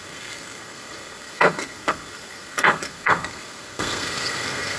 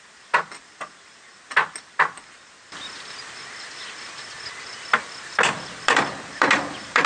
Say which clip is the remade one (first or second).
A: first